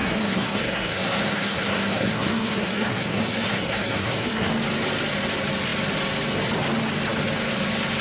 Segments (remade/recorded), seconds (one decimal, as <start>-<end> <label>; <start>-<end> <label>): 0.0-4.5 remade; 4.5-8.0 recorded